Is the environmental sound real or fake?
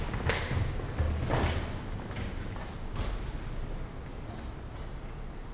real